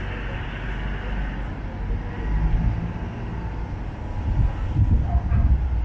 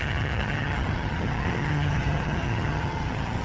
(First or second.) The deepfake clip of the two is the second